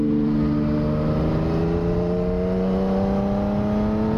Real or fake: real